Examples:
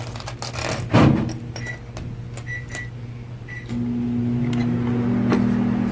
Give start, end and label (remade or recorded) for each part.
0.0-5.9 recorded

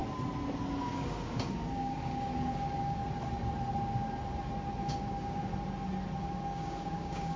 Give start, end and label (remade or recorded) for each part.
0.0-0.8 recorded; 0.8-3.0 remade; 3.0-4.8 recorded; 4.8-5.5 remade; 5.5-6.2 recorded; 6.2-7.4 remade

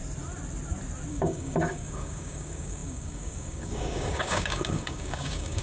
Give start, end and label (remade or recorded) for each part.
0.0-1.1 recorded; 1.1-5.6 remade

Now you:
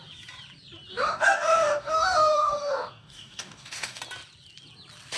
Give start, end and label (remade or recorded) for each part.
0.0-0.9 recorded; 0.9-4.0 remade; 4.0-5.2 recorded